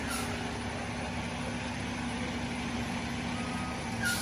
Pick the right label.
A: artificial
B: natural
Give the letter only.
B